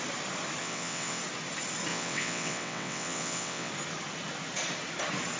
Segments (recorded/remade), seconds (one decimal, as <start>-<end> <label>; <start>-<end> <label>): 0.0-0.6 recorded; 0.6-1.2 remade; 1.2-1.9 recorded; 1.9-3.7 remade; 3.7-5.4 recorded